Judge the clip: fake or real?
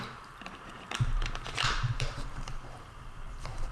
fake